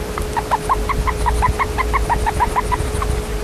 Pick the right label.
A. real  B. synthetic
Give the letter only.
A